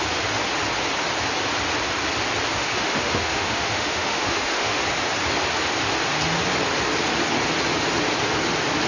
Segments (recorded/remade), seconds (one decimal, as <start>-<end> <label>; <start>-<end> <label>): 0.0-2.5 recorded; 2.5-4.8 remade; 4.8-8.9 recorded